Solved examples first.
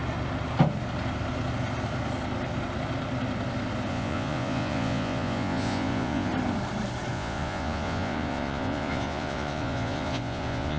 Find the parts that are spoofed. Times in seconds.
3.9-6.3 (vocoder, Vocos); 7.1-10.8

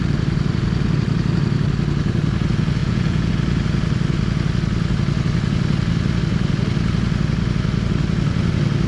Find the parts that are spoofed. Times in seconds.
2.8-3.3 (vocoder, Vocos)

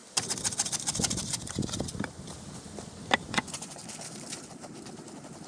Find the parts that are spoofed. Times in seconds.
3.3-3.8 (vocoder, Vocos)

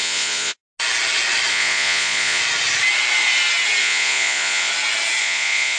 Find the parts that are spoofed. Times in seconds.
0.0-0.6 (vocoder, Vocos); 1.5-2.4; 3.8-4.7; 5.2-5.8

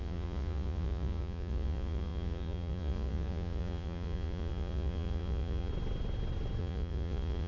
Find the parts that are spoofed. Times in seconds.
0.0-5.7 (vocoder, Vocos); 6.6-7.5

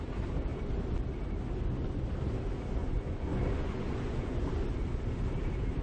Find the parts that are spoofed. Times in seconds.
2.8-4.5 (vocoder, Vocos)

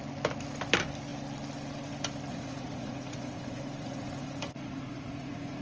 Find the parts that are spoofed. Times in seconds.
2.3-5.6 (vocoder, Vocos)

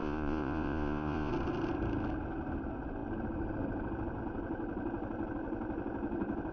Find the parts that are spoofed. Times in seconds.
0.0-1.3 (vocoder, Vocos)